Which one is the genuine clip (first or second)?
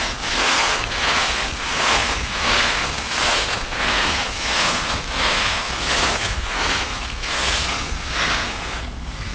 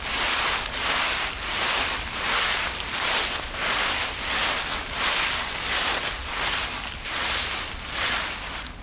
second